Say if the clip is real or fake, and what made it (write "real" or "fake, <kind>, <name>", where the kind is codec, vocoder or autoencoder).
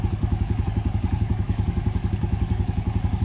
fake, codec, DAC